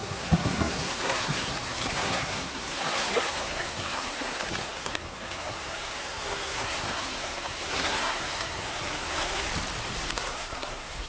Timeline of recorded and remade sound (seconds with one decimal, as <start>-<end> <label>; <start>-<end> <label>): 0.0-9.5 remade; 9.5-10.0 recorded; 10.0-11.1 remade